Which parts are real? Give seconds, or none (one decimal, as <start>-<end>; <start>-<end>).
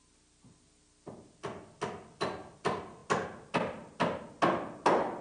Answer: 0.0-5.2